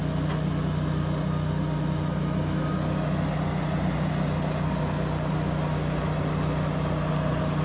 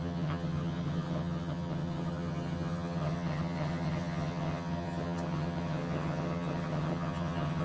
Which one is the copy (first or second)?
second